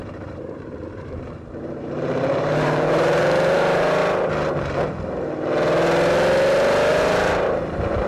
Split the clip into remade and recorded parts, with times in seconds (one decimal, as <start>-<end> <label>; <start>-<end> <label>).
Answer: 0.0-4.0 remade; 4.0-6.9 recorded; 6.9-8.1 remade